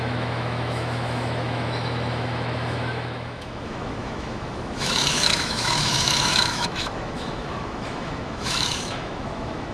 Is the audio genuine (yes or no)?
no